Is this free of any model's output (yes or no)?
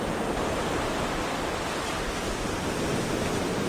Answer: yes